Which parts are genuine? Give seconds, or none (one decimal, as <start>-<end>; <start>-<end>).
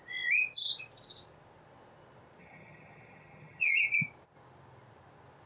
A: 0.0-2.4; 3.8-5.5